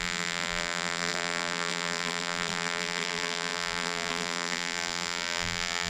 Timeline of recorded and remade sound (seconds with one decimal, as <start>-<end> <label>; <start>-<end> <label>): 0.0-5.9 remade